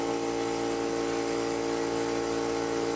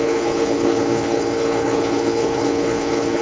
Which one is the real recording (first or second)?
first